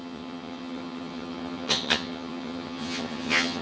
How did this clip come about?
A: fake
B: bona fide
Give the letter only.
A